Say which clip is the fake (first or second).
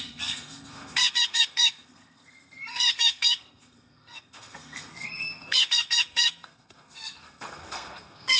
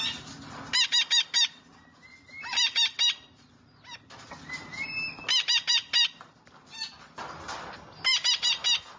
first